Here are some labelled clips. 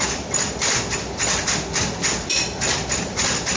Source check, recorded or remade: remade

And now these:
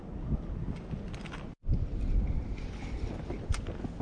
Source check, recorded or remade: recorded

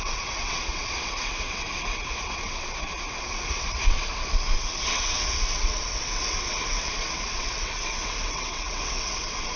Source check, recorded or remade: remade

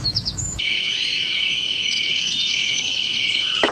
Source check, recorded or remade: remade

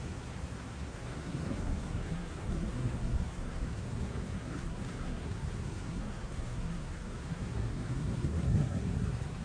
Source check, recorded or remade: remade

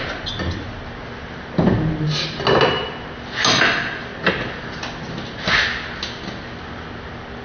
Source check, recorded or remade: recorded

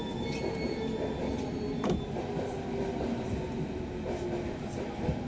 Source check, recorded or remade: recorded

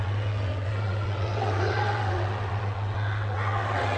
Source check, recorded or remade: remade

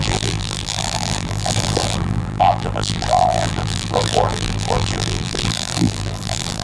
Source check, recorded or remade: remade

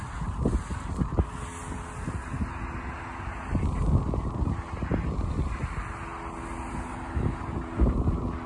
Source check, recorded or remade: recorded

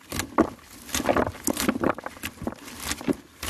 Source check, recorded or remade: recorded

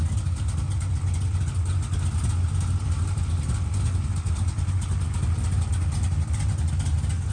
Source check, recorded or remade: recorded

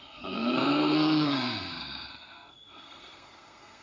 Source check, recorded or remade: remade